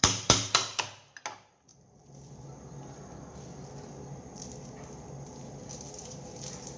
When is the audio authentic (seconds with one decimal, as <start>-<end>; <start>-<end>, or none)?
0.8-6.8